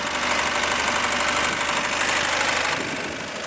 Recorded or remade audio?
recorded